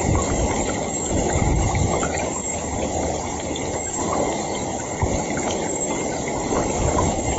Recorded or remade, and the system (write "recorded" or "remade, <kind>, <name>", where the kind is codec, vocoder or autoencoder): recorded